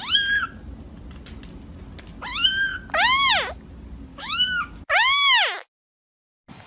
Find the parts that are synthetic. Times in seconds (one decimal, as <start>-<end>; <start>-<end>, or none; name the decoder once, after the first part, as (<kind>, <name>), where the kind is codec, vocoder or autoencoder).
4.1-4.9 (codec, DAC)